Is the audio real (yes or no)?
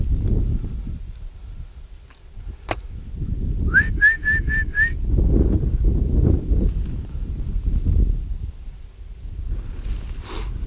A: yes